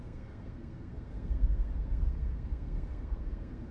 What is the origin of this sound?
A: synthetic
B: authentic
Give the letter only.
A